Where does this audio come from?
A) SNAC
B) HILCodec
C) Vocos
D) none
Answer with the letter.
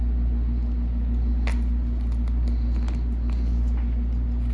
D